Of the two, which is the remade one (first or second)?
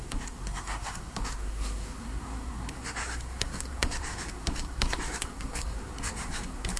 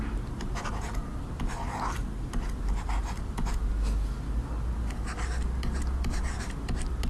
first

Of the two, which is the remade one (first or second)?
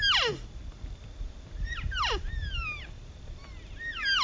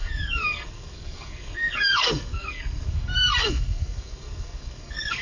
second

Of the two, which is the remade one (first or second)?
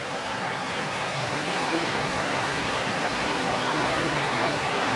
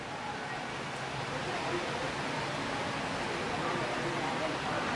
first